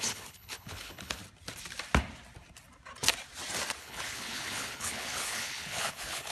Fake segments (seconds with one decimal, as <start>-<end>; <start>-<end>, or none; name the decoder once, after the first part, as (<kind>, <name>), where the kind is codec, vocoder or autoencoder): 0.0-1.2 (codec, HILCodec); 3.8-6.3